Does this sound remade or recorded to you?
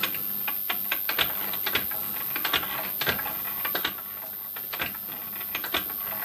recorded